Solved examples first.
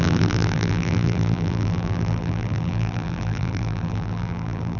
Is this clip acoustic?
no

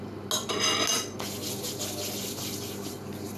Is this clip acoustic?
yes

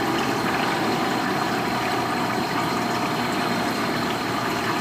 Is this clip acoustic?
no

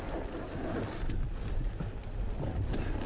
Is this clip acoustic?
yes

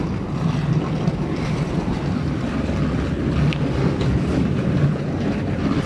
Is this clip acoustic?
yes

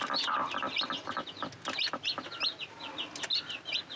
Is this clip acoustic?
yes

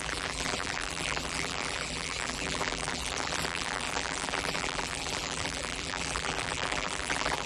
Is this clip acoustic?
no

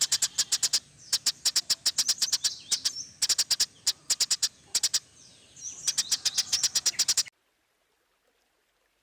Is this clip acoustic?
yes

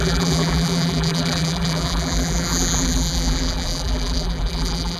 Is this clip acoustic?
no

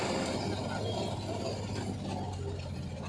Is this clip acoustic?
yes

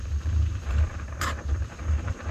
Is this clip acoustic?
no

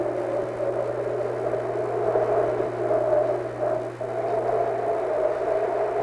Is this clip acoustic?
yes